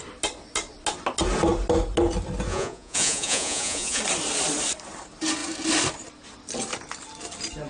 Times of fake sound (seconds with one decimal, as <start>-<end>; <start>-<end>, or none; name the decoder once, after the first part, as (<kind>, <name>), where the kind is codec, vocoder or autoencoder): 2.5-4.0 (vocoder, Vocos)